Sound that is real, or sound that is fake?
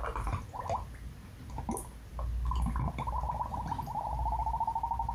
real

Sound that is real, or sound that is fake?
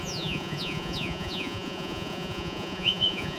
fake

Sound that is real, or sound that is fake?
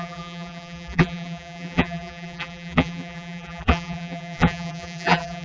fake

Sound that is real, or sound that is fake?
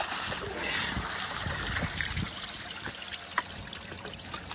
real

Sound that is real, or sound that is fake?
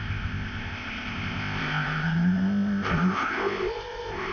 fake